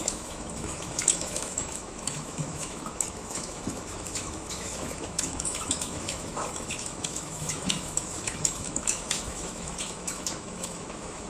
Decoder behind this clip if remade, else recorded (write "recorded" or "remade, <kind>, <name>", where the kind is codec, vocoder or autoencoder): remade, autoencoder, DAC-VAE